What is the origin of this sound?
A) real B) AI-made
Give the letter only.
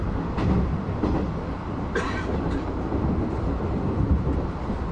A